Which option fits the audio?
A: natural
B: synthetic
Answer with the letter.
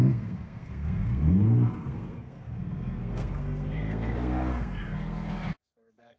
B